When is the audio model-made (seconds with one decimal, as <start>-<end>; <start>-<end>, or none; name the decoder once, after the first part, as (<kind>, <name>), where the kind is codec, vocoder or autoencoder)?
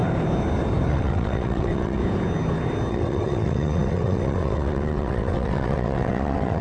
0.9-2.0 (vocoder, WaveNeXt); 2.9-6.6